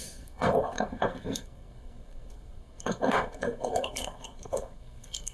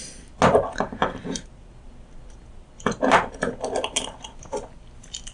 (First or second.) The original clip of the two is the second